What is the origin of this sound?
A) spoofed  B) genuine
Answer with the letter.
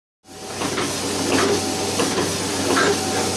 B